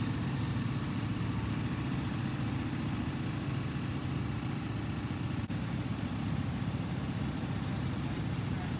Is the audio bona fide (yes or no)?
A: yes